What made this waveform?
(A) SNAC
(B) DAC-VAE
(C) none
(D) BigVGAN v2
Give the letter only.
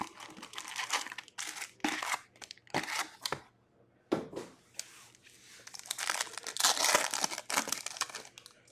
C